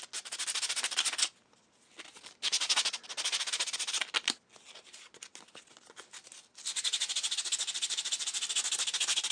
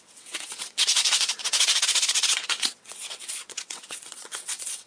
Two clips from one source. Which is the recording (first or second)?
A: first